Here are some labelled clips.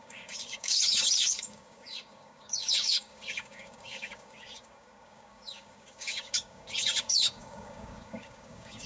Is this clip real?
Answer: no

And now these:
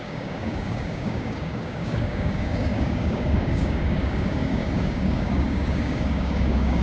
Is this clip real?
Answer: no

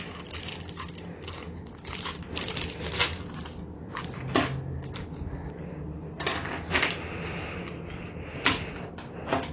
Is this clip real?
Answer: yes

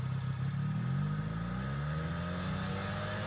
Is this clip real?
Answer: yes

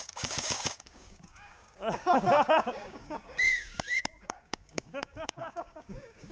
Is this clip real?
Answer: no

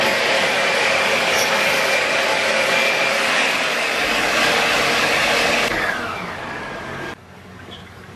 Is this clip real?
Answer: no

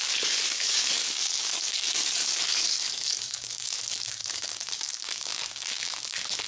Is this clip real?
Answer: no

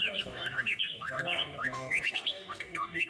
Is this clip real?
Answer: no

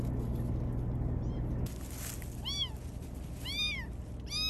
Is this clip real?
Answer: yes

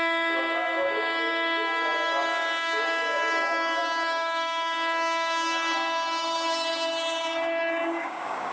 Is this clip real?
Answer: no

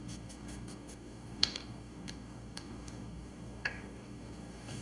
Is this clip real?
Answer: no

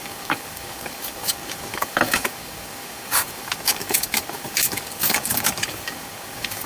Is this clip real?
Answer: no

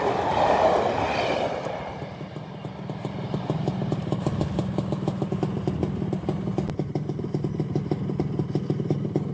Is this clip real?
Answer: yes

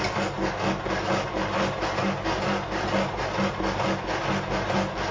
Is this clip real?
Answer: yes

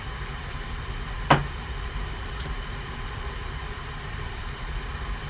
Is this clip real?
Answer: yes